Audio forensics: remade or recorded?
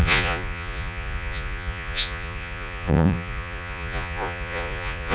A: remade